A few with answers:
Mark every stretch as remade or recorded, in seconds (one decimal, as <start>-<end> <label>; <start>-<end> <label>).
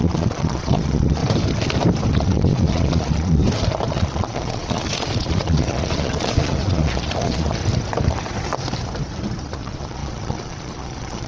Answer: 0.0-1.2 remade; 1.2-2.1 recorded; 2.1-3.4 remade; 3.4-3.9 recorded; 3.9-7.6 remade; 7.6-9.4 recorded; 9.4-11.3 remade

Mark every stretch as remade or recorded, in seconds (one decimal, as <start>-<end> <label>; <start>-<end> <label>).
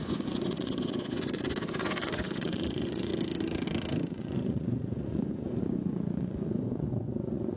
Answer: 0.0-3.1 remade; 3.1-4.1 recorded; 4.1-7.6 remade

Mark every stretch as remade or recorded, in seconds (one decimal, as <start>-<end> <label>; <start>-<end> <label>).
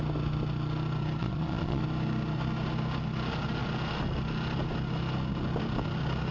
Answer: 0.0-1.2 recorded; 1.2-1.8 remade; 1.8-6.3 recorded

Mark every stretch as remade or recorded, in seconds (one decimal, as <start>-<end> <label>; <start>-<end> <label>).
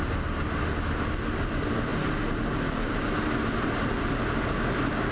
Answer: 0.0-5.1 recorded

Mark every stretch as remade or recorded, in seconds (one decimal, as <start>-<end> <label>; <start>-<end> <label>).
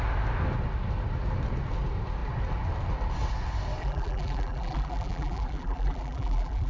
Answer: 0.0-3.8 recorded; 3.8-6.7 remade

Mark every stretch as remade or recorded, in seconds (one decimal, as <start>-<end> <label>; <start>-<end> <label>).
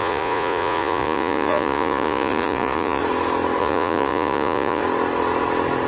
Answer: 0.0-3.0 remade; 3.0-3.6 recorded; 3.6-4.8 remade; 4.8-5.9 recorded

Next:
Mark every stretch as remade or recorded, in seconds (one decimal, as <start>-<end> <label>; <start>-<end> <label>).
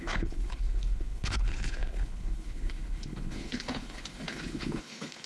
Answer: 0.0-5.3 remade